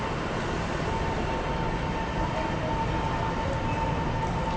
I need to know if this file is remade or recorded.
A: recorded